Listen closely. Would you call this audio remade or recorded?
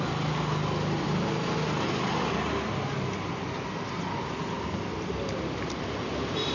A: recorded